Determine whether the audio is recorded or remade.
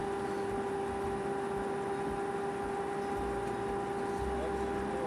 recorded